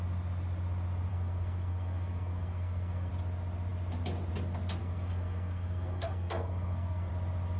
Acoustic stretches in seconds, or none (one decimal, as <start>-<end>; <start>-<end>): 0.0-1.1; 3.1-4.8; 7.1-7.6